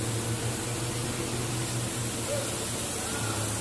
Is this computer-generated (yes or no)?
no